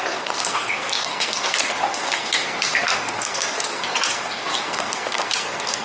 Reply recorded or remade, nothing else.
remade